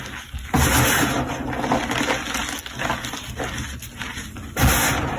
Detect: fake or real real